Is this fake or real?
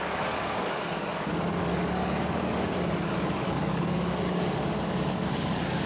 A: fake